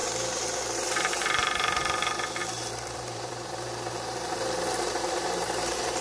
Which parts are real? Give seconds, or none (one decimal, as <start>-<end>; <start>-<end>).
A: 1.8-2.4